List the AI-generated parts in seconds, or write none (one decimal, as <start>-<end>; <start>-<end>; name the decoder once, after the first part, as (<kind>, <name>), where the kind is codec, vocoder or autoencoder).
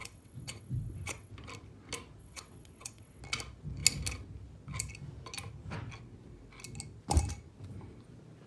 0.0-1.3 (vocoder, WaveNeXt); 2.2-3.2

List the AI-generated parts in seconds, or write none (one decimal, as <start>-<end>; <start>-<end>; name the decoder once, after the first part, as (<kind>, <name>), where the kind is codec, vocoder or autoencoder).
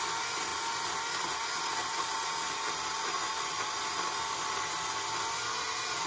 none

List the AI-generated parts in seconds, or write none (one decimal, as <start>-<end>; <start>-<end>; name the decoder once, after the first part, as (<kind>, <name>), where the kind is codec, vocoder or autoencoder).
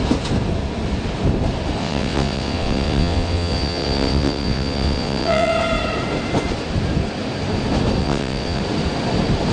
1.8-5.5 (vocoder, WaveNeXt); 8.0-8.6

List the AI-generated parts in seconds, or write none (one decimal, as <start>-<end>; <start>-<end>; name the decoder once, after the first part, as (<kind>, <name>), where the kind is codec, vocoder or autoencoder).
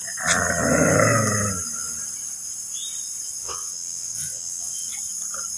3.4-4.9 (vocoder, WaveNeXt)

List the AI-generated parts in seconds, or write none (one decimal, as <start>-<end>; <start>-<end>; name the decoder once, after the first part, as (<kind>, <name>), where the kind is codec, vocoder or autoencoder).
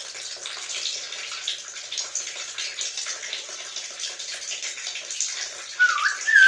none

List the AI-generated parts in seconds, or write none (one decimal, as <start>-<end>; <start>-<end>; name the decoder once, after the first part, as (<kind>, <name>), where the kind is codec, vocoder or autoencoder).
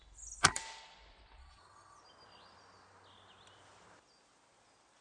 1.4-2.0 (vocoder, WaveNeXt)